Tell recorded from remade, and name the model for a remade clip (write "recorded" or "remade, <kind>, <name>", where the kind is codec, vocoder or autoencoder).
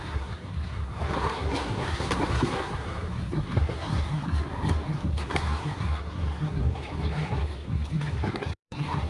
remade, codec, SNAC